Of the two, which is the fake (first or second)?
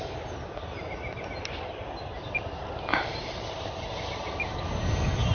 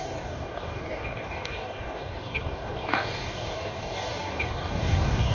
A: second